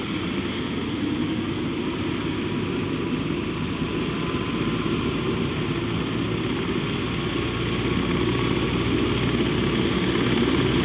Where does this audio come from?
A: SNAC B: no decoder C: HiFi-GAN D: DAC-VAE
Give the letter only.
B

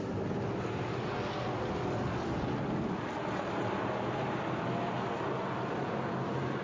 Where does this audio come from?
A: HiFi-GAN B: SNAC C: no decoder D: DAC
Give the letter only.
C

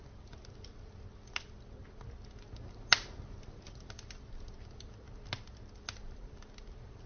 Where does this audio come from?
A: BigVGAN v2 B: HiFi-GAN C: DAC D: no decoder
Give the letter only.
D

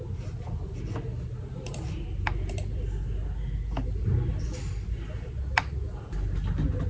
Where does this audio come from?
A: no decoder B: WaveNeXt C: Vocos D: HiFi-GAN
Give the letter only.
A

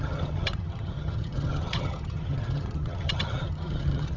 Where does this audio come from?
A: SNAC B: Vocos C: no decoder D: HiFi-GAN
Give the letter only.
D